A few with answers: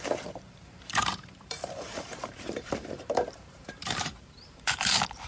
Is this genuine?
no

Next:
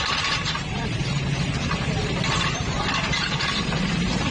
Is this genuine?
no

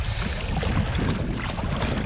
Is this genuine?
yes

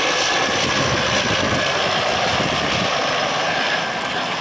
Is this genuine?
no